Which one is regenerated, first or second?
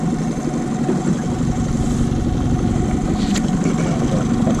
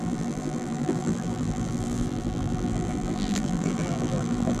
second